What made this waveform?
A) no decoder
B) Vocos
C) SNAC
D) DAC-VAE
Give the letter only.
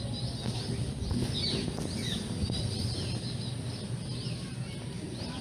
A